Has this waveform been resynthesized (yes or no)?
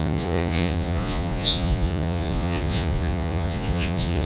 yes